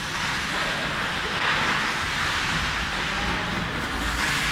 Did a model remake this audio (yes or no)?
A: no